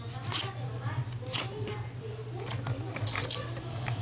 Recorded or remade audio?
recorded